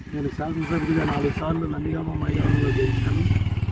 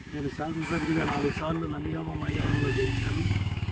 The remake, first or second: second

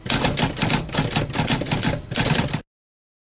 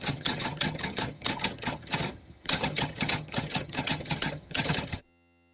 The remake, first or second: second